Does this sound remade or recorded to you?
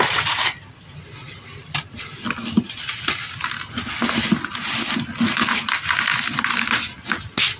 recorded